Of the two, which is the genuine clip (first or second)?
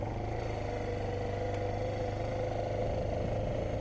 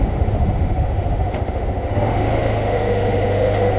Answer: first